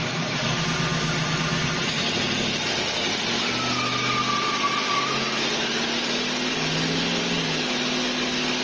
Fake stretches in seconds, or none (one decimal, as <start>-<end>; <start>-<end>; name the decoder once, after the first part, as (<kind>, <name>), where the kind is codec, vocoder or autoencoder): none